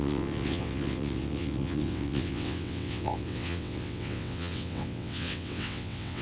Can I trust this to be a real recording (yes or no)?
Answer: no